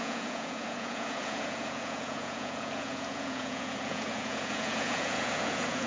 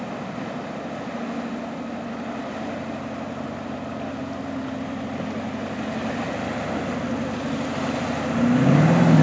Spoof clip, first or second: first